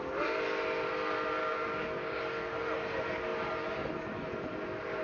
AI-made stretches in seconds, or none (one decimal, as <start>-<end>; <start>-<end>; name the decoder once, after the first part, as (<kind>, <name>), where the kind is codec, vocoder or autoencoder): 1.4-2.2 (codec, DAC)